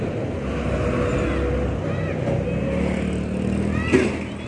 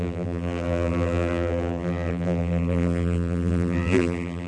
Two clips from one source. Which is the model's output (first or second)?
second